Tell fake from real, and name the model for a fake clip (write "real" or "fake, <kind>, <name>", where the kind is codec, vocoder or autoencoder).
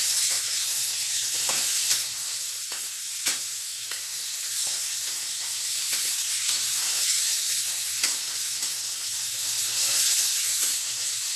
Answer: fake, codec, SNAC